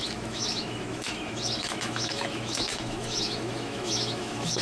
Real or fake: fake